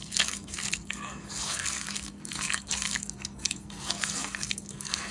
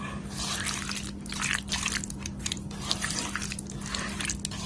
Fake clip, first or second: first